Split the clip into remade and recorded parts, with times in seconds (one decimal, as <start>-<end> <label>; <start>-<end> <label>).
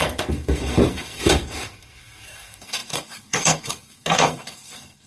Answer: 0.0-5.1 remade